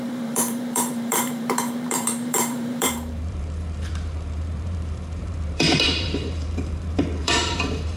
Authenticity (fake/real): fake